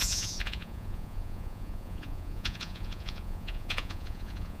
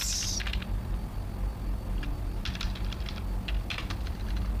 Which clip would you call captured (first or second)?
second